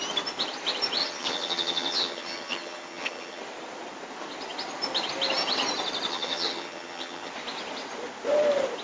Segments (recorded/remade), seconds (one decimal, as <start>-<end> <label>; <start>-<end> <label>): 0.0-1.0 recorded; 1.0-3.4 remade; 3.4-6.1 recorded; 6.1-7.3 remade; 7.3-8.8 recorded